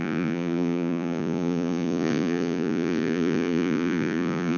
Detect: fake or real fake